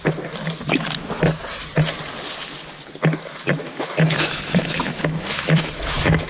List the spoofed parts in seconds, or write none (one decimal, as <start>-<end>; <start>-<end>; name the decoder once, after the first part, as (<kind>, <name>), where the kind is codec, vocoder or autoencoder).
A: 3.6-6.3 (autoencoder, DAC-VAE)

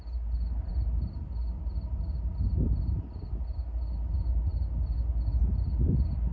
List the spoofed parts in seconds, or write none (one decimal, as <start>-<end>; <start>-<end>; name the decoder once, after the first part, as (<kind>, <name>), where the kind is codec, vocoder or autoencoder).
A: none

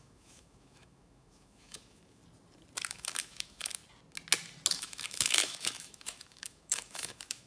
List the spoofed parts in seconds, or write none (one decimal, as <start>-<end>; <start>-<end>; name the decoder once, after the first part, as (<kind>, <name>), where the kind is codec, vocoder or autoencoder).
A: 0.0-2.2 (autoencoder, DAC-VAE); 2.9-3.8; 4.7-7.5

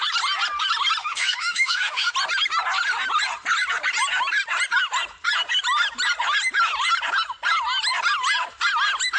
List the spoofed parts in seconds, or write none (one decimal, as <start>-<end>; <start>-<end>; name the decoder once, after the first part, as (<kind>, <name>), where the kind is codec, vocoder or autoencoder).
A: 1.0-2.1 (autoencoder, DAC-VAE)

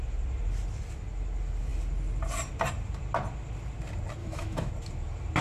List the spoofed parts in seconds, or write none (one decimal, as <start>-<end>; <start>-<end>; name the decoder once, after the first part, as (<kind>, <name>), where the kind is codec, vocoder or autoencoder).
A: 4.2-4.7 (autoencoder, DAC-VAE)

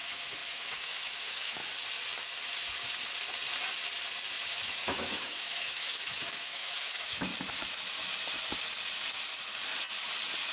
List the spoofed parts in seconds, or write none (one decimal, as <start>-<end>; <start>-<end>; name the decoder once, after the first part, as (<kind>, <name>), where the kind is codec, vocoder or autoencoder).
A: 0.0-1.6 (autoencoder, DAC-VAE); 4.5-7.3